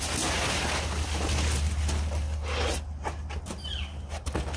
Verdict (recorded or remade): recorded